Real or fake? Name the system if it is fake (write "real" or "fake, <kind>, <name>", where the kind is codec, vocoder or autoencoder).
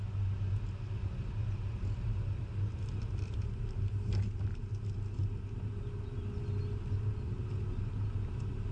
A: real